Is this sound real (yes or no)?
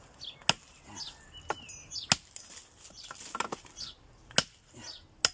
yes